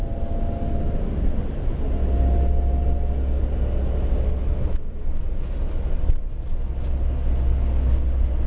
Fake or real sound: real